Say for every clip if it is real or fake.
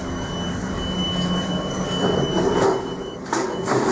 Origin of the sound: fake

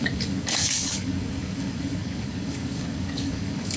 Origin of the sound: fake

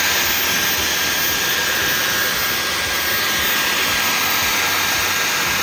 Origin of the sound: real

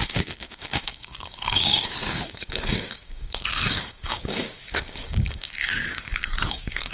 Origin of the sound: fake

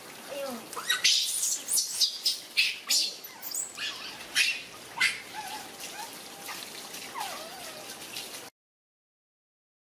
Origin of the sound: real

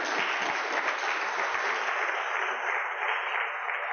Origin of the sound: real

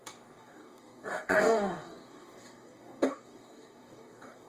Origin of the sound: fake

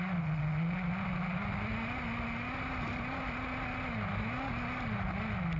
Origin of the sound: real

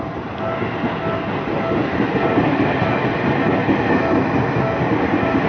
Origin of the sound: real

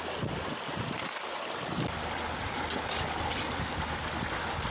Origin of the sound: real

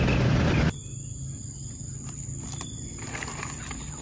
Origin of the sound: real